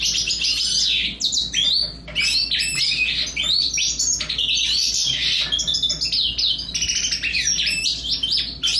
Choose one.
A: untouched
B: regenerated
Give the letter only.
A